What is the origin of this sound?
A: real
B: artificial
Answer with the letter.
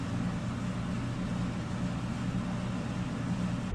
A